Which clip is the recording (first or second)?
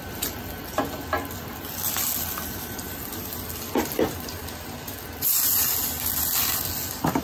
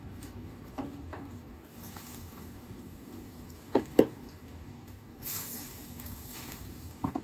first